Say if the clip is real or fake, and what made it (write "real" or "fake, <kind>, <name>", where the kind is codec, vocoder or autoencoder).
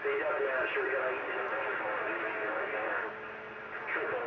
real